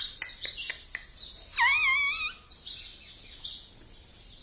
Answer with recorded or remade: recorded